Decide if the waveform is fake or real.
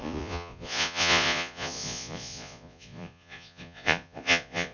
fake